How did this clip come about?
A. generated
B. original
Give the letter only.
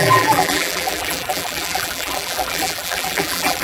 A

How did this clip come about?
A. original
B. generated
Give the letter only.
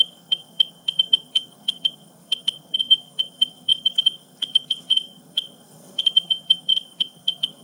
B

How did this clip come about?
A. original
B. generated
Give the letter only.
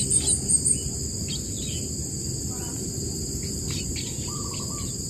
A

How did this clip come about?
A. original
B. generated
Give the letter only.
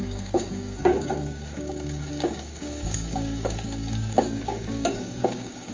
B